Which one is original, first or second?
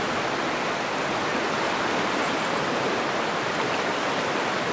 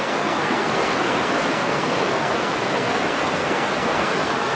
first